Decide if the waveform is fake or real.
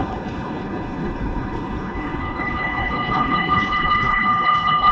fake